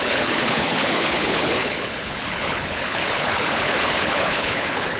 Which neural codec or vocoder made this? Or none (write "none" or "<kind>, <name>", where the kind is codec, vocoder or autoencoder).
codec, HILCodec